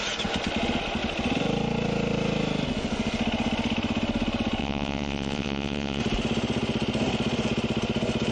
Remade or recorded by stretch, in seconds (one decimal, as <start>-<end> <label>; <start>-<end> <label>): 0.0-4.6 recorded; 4.6-6.0 remade; 6.0-8.3 recorded